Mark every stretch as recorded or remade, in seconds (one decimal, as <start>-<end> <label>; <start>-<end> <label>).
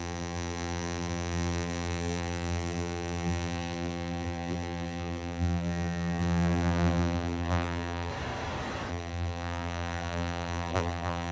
0.0-8.1 remade; 8.1-8.9 recorded; 8.9-11.3 remade